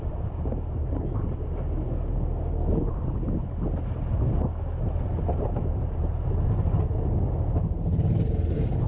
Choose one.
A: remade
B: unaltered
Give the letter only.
B